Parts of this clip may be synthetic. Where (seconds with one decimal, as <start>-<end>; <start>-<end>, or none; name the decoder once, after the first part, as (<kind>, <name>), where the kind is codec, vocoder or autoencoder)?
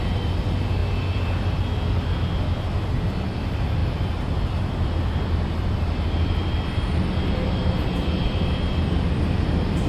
0.0-0.8 (vocoder, BigVGAN v2); 3.0-9.9